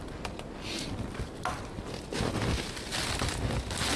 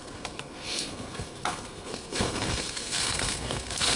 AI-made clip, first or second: second